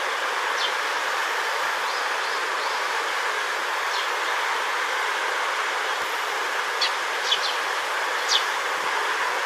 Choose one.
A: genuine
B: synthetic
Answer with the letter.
A